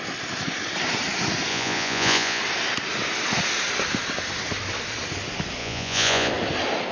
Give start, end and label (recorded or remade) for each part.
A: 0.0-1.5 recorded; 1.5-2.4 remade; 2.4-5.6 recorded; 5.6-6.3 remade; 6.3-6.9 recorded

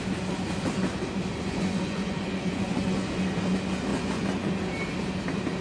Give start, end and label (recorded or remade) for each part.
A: 0.0-1.3 recorded; 1.3-3.1 remade; 3.1-3.9 recorded; 3.9-4.5 remade; 4.5-5.6 recorded

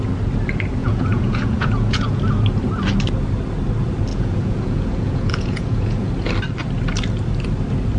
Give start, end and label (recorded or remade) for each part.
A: 0.0-0.8 recorded; 0.8-2.2 remade; 2.2-4.1 recorded; 4.1-6.1 remade; 6.1-8.0 recorded

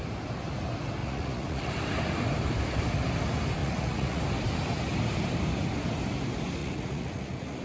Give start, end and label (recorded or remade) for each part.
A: 0.0-1.0 recorded; 1.0-1.7 remade; 1.7-3.6 recorded; 3.6-4.2 remade; 4.2-6.6 recorded; 6.6-7.6 remade

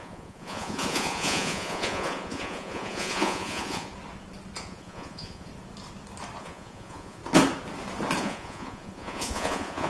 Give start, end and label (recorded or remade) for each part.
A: 0.0-3.9 remade; 3.9-4.6 recorded; 4.6-5.5 remade; 5.5-6.4 recorded; 6.4-7.2 remade; 7.2-8.2 recorded; 8.2-9.9 remade

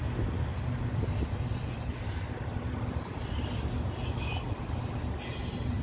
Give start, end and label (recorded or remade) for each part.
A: 0.0-5.8 recorded

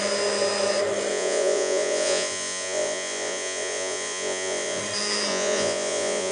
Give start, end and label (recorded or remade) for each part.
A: 0.0-1.1 recorded; 1.1-4.8 remade; 4.8-5.3 recorded; 5.3-6.3 remade